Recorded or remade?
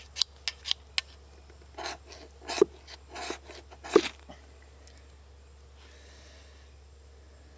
recorded